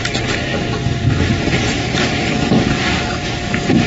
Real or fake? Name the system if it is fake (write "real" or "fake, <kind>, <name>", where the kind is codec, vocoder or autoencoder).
real